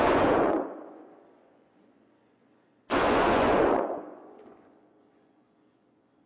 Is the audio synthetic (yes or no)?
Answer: yes